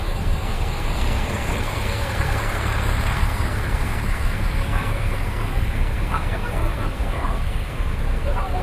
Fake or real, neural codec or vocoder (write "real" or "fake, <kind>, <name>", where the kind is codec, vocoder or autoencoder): fake, codec, SNAC